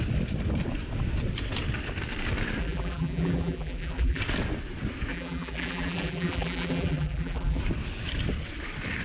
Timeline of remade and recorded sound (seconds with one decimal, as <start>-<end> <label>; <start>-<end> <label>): 0.0-2.6 recorded; 2.6-4.2 remade; 4.2-5.1 recorded; 5.1-7.6 remade; 7.6-9.0 recorded